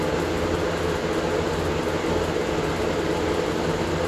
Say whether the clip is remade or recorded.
recorded